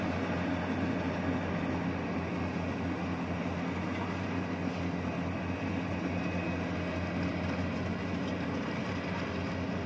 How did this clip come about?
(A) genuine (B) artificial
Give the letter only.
A